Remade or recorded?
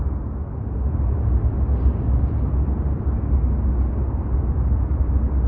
recorded